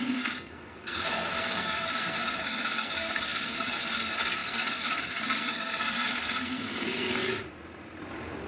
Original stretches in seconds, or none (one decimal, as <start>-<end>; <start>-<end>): 7.3-8.5